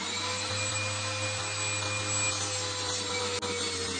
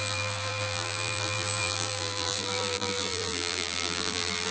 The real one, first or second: first